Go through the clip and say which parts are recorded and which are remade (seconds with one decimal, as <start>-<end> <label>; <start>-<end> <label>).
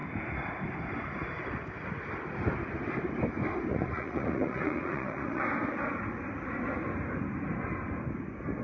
0.0-3.7 recorded; 3.7-5.4 remade; 5.4-8.6 recorded